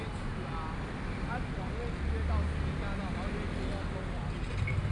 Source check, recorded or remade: recorded